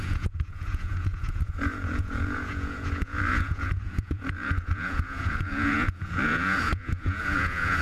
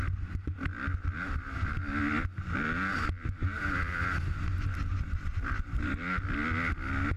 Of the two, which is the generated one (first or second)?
first